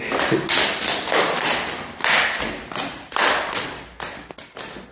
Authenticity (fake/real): real